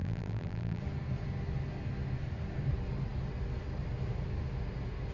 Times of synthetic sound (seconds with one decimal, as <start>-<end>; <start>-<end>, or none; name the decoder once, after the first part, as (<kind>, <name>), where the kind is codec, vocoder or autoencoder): 0.0-0.8 (vocoder, BigVGAN v2)

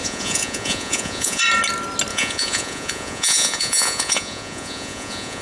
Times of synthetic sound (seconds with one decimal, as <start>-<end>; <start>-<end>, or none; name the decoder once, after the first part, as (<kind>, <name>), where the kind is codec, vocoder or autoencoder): 0.0-1.4 (vocoder, Vocos); 2.1-5.4

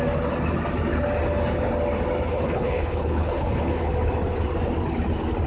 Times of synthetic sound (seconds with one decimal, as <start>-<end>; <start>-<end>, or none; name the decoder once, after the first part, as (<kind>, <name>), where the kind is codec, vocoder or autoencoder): 2.3-3.9 (codec, HILCodec)

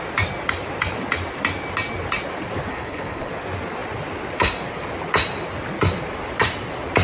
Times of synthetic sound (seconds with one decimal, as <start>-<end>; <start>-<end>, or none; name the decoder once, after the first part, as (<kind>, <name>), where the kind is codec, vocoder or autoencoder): 2.7-3.3 (codec, HILCodec)

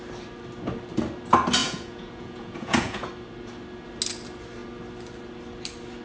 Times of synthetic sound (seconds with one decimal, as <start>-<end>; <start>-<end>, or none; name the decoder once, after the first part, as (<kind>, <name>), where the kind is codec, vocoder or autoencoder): 1.6-3.1 (vocoder, Vocos)

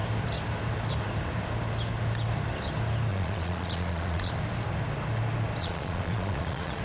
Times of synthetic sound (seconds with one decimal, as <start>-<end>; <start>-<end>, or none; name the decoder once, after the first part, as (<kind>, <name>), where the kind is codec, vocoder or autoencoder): 3.1-4.3 (vocoder, Vocos); 5.6-6.8

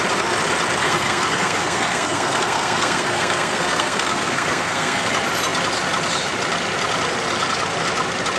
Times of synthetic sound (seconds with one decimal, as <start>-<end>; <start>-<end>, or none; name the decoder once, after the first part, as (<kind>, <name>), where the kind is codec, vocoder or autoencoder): 0.8-5.1 (codec, SNAC)